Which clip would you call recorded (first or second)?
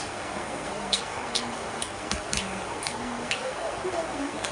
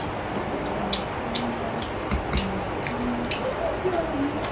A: second